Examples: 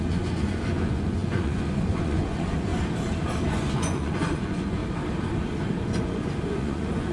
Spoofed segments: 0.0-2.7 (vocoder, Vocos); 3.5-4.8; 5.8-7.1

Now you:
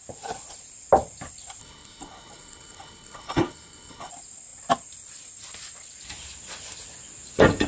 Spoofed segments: 1.6-4.1 (codec, HILCodec)